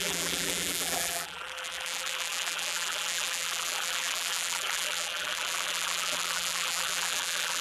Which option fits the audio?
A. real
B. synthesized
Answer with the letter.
B